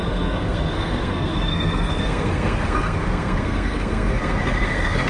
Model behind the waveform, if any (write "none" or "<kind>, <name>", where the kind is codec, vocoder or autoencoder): codec, SNAC